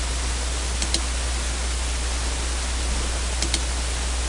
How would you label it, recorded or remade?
recorded